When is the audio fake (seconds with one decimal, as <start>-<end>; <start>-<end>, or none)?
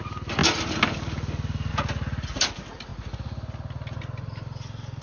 none